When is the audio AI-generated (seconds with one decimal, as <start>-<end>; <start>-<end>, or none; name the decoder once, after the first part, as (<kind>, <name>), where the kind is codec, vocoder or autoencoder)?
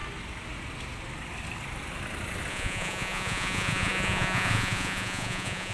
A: 2.5-5.7 (vocoder, Vocos)